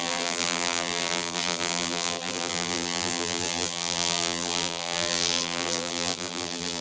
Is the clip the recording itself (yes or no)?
no